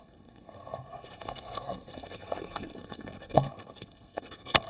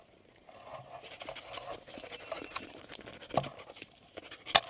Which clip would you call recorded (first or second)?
second